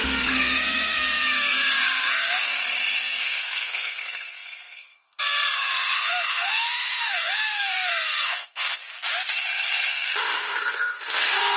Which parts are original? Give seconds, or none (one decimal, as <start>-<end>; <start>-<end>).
2.6-3.2; 8.8-9.9